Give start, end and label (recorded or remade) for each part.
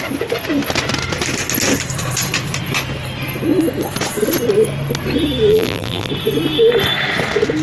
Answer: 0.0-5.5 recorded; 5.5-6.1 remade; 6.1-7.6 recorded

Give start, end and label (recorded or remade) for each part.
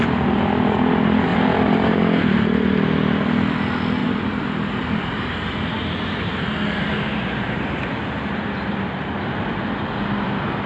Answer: 0.0-1.3 recorded; 1.3-2.0 remade; 2.0-4.0 recorded; 4.0-9.2 remade; 9.2-10.7 recorded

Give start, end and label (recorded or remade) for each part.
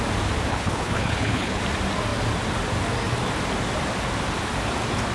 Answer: 0.0-0.5 recorded; 0.5-1.6 remade; 1.6-5.1 recorded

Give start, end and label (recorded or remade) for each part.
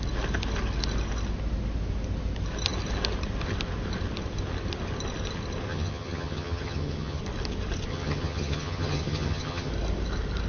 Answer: 0.0-5.7 recorded; 5.7-7.2 remade; 7.2-7.9 recorded; 7.9-9.7 remade; 9.7-10.5 recorded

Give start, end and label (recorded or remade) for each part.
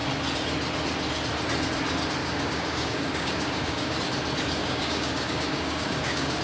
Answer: 0.0-2.2 recorded; 2.2-4.0 remade; 4.0-4.6 recorded; 4.6-6.4 remade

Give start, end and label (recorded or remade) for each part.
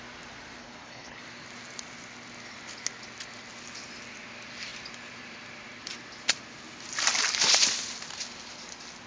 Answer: 0.0-0.6 recorded; 0.6-1.2 remade; 1.2-9.1 recorded